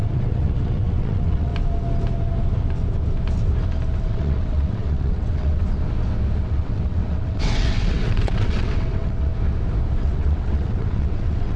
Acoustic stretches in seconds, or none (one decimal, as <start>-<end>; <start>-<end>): 1.5-4.0; 5.6-6.4; 9.3-10.0